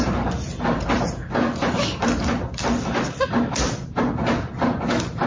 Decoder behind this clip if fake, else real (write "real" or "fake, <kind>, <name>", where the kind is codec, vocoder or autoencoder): real